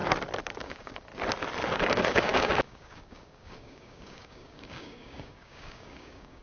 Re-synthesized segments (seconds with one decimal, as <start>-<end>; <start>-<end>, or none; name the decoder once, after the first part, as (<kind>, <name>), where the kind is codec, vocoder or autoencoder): 0.6-1.1 (codec, DAC); 1.7-6.4